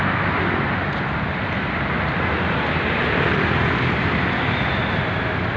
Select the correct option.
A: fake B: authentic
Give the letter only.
B